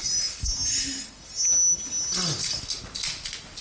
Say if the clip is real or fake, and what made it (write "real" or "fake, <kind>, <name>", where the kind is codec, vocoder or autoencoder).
real